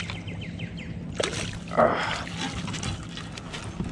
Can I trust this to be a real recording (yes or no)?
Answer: yes